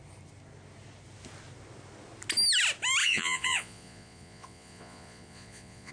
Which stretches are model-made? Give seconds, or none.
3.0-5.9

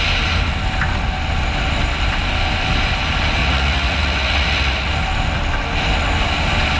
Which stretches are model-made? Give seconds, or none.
3.4-4.9

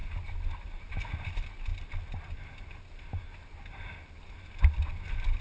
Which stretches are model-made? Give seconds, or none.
none

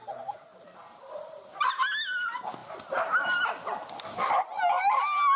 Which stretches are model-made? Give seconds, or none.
none

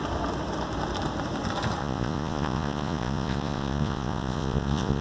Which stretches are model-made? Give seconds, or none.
1.8-5.0

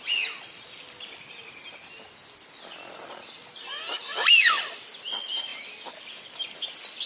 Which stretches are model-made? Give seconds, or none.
none

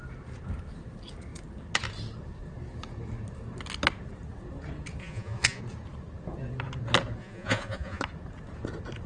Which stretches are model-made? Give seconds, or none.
5.0-5.6; 7.2-8.0